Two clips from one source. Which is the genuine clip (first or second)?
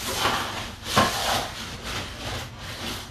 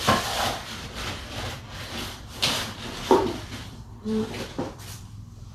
first